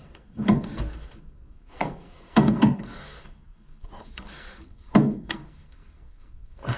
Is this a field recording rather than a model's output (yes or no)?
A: no